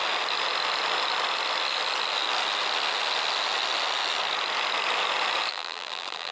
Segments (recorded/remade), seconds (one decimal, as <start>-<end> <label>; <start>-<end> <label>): 0.0-5.5 recorded; 5.5-6.3 remade